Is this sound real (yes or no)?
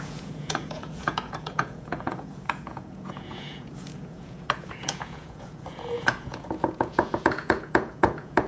no